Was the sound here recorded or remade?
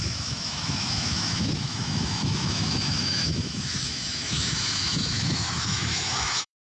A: remade